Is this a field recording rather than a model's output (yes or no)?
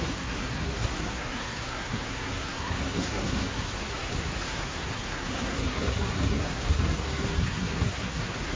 no